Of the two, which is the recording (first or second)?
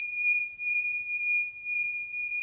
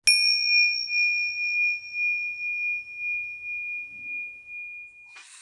second